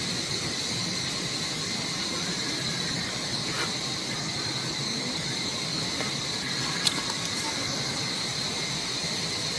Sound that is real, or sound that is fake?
real